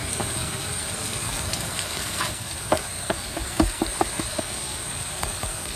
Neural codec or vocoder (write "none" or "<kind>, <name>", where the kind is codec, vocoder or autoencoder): codec, SNAC